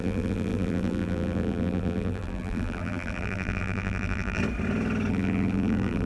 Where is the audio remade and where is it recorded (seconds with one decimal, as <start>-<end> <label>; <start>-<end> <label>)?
0.0-4.4 remade; 4.4-5.1 recorded; 5.1-6.1 remade